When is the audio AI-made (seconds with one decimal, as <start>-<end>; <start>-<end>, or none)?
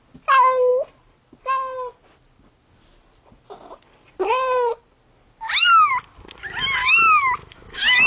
6.8-8.1